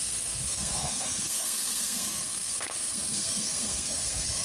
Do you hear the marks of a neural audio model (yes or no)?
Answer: yes